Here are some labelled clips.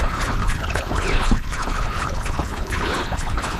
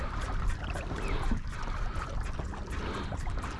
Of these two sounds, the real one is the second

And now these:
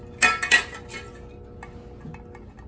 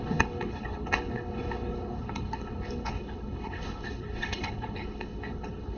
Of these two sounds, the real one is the first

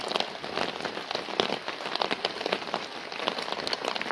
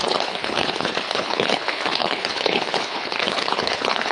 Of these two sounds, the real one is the first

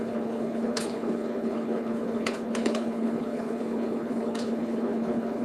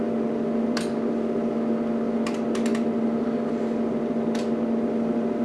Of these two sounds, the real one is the second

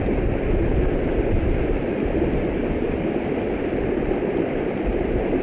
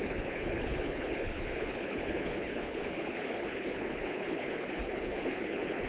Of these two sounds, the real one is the first